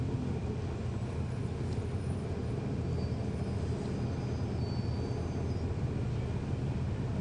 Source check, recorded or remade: recorded